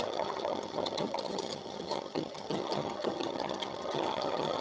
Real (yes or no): no